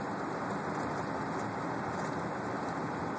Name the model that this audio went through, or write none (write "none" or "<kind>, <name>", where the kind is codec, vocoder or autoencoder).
none